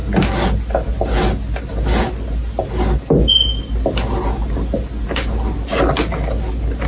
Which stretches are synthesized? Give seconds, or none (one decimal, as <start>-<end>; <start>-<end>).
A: none